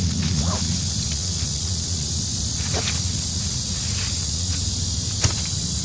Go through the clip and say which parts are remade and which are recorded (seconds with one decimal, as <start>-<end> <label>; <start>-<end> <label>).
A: 0.0-2.1 remade; 2.1-2.5 recorded; 2.5-4.6 remade; 4.6-5.8 recorded

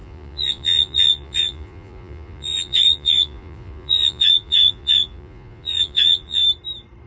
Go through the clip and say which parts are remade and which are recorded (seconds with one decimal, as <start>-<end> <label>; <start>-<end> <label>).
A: 0.0-6.4 remade; 6.4-7.1 recorded

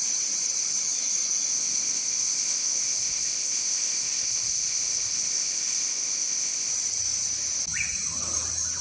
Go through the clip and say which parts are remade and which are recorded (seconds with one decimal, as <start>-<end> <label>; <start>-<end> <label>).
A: 0.0-1.5 recorded; 1.5-6.7 remade; 6.7-8.8 recorded

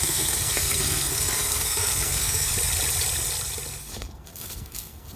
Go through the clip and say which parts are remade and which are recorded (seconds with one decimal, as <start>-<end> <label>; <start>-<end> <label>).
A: 0.0-2.5 remade; 2.5-3.8 recorded; 3.8-5.2 remade

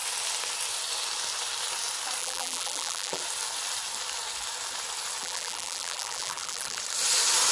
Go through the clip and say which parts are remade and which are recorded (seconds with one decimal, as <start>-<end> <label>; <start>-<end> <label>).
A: 0.0-2.2 recorded; 2.2-3.2 remade; 3.2-5.2 recorded; 5.2-6.8 remade; 6.8-7.5 recorded